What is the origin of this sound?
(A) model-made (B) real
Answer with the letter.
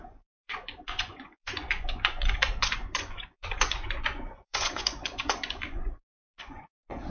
A